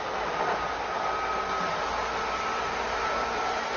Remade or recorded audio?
recorded